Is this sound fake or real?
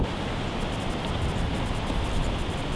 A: real